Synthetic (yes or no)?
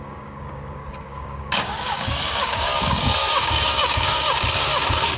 yes